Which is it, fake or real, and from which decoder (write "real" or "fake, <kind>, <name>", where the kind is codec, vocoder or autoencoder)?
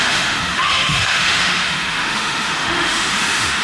fake, autoencoder, DAC-VAE